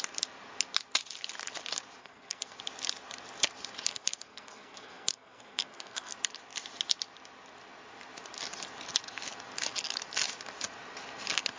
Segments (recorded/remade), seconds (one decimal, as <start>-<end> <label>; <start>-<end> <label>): 0.0-2.0 recorded; 2.0-2.6 remade; 2.6-3.9 recorded; 3.9-6.1 remade; 6.1-11.6 recorded